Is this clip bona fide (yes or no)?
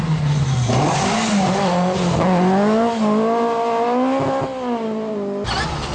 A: yes